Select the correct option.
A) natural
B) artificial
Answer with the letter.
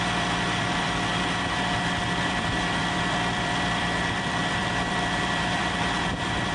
B